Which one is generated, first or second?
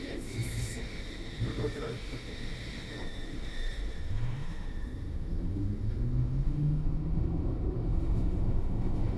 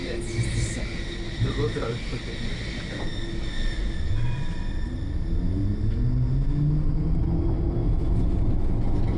first